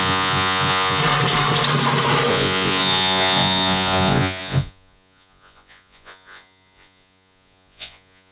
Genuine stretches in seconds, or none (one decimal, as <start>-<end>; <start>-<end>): 1.0-2.3